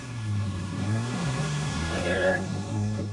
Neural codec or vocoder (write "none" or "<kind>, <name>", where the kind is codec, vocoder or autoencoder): codec, SNAC